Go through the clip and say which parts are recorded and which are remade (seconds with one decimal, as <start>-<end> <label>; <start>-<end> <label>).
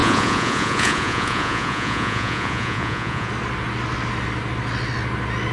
0.0-3.3 remade; 3.3-5.5 recorded